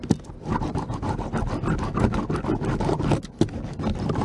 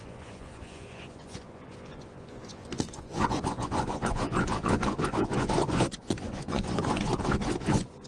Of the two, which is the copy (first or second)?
second